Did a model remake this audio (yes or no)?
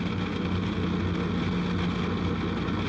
no